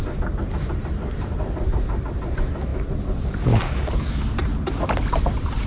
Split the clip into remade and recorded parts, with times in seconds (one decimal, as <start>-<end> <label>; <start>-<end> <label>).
0.0-5.7 recorded